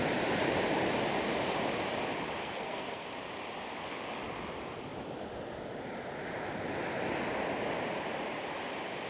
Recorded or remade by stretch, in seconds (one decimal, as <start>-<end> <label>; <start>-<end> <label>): 0.0-2.4 recorded; 2.4-3.1 remade; 3.1-9.1 recorded